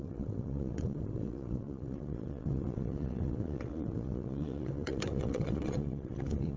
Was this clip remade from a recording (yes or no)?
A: yes